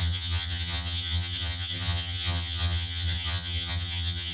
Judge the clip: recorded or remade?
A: remade